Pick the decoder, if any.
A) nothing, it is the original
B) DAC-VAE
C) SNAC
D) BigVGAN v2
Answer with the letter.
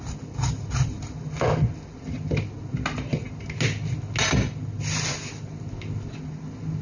A